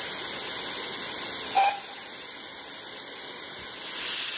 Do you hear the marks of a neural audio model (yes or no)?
no